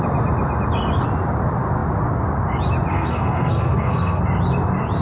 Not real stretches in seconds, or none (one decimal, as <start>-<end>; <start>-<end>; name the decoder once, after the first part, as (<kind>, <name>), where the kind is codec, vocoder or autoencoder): 2.9-4.2 (codec, SNAC)